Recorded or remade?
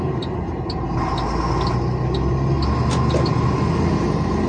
recorded